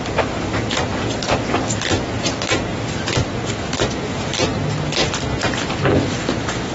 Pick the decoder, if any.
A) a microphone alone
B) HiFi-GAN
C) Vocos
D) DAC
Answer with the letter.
A